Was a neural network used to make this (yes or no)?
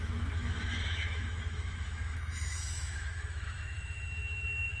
yes